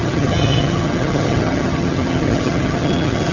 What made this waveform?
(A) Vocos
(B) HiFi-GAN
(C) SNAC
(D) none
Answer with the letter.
B